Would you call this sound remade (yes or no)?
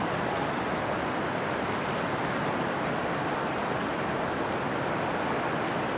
no